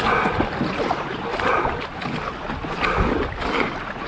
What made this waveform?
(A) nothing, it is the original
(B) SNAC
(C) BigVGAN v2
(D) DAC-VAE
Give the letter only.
C